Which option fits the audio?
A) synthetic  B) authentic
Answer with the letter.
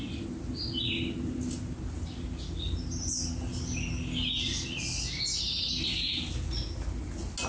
B